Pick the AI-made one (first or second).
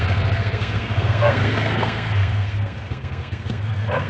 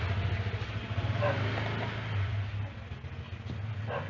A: first